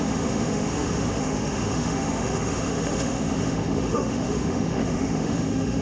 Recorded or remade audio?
remade